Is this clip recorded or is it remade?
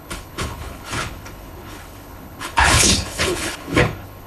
remade